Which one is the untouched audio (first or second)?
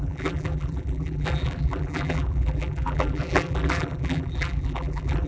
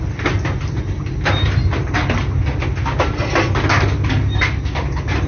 second